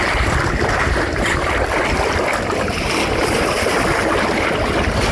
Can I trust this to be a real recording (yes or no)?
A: yes